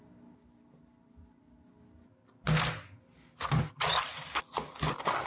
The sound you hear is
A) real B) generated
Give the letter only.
A